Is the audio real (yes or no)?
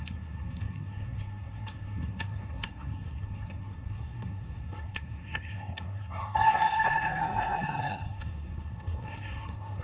no